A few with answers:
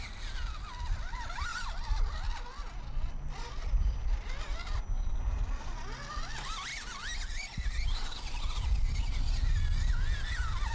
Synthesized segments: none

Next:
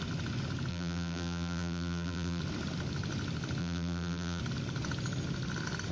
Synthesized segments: 0.7-2.4 (vocoder, BigVGAN v2); 3.6-4.4